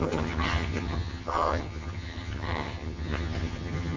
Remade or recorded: remade